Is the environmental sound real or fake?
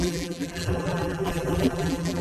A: fake